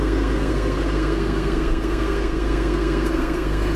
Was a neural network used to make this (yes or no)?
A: yes